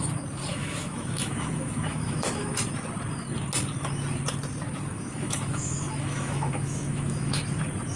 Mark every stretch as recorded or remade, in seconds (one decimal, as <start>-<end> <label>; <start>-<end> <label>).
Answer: 0.0-0.5 recorded; 0.5-2.6 remade; 2.6-4.9 recorded; 4.9-7.4 remade; 7.4-8.0 recorded